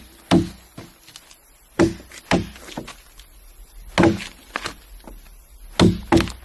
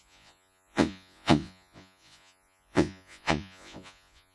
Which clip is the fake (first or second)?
second